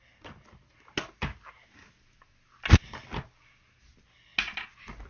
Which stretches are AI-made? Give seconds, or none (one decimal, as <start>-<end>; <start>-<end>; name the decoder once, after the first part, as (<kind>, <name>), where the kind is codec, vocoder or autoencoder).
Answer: none